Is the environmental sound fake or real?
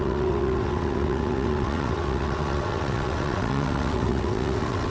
fake